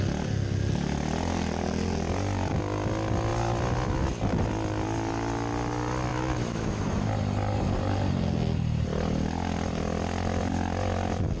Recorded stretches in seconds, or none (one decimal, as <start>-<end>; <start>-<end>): 0.0-6.1; 7.1-11.4